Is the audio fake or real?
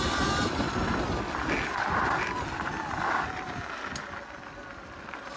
real